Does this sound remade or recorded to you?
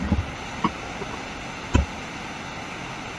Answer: recorded